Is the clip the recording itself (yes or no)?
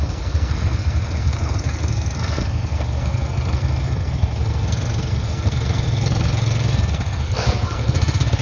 no